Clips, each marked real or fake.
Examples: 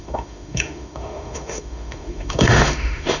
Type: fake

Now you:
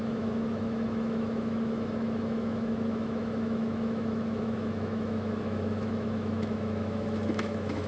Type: fake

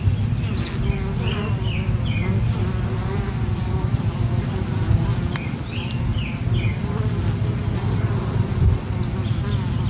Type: real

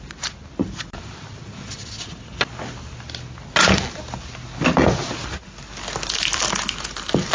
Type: real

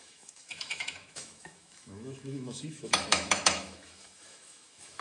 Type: fake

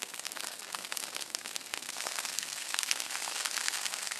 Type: fake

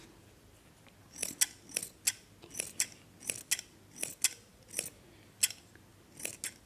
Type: real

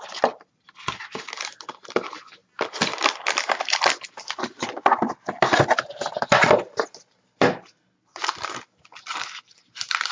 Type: real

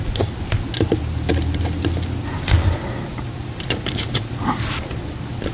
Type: real